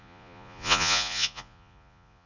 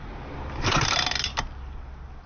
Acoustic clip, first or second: second